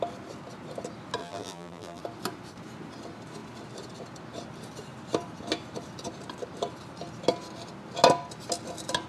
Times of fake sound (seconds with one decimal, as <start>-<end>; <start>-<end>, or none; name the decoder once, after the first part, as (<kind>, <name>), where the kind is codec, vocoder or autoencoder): 1.2-2.0 (vocoder, BigVGAN v2)